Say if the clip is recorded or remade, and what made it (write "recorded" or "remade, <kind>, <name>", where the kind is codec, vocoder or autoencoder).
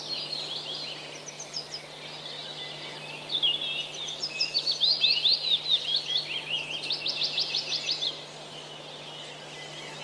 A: recorded